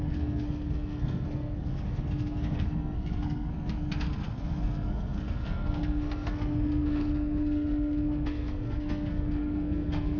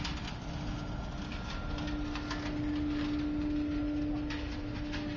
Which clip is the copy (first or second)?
first